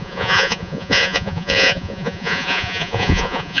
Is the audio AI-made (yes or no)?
yes